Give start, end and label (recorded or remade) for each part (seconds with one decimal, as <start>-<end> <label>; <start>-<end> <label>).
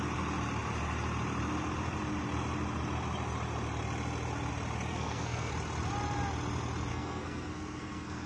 0.0-4.9 recorded; 4.9-5.5 remade; 5.5-6.9 recorded; 6.9-8.3 remade